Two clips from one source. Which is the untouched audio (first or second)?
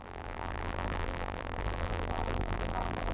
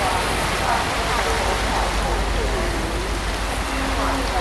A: second